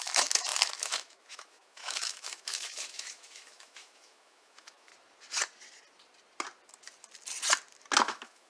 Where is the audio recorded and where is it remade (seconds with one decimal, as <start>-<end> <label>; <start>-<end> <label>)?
0.0-4.9 remade; 4.9-8.0 recorded; 8.0-8.5 remade